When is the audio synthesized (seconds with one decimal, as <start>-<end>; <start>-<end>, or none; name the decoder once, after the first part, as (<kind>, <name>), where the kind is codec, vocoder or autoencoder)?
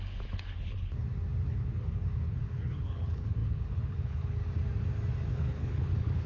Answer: 0.0-1.0 (codec, HILCodec); 1.5-4.4; 5.3-6.3